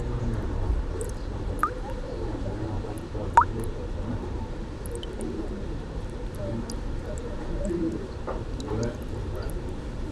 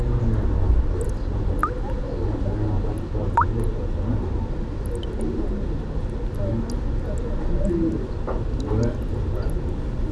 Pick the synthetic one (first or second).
first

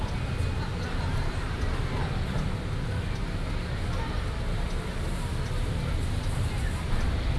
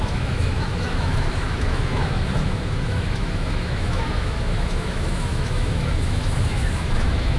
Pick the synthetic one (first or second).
second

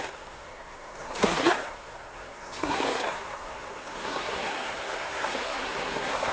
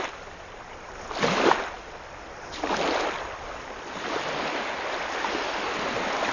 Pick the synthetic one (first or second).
first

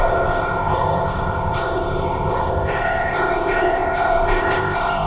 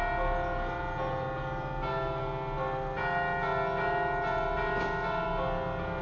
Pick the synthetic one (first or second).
first